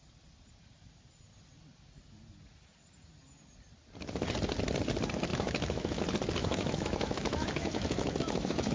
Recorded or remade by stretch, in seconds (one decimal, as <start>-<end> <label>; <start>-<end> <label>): 0.0-5.3 recorded; 5.3-6.0 remade; 6.0-6.4 recorded; 6.4-8.7 remade